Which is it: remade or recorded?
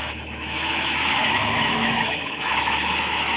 remade